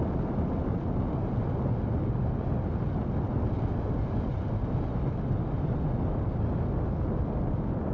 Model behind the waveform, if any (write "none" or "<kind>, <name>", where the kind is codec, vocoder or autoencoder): none